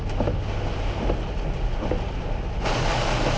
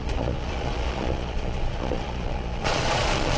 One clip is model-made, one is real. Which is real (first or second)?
first